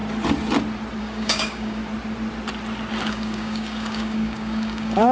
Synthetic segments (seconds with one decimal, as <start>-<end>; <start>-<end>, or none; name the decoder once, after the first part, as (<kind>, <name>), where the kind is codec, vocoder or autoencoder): 1.0-1.8 (codec, DAC); 3.1-5.1